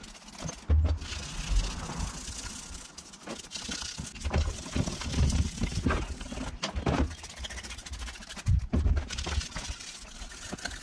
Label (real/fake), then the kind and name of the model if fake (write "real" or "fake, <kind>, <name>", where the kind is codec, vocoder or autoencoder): real